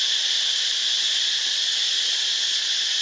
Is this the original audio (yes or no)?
yes